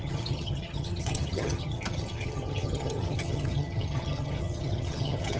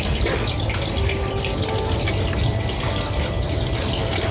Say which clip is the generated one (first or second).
first